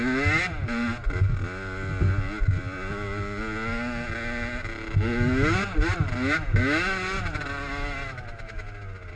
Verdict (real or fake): real